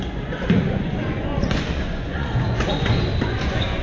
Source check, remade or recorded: remade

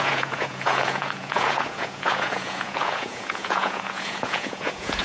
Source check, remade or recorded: remade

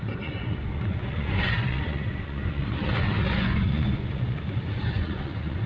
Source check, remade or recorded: remade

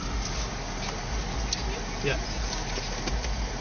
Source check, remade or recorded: recorded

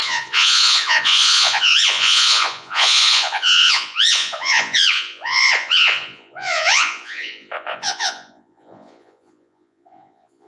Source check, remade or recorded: remade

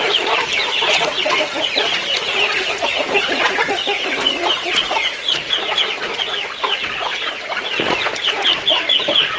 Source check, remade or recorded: remade